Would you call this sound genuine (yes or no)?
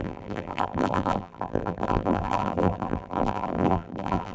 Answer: no